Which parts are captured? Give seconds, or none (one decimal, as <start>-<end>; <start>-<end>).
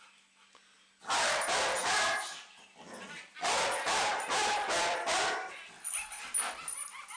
0.0-1.8; 5.6-7.2